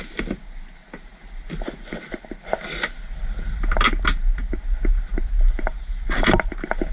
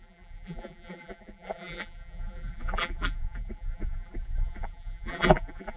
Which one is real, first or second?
first